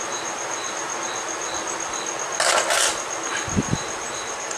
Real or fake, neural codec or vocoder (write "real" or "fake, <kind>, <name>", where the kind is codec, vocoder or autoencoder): real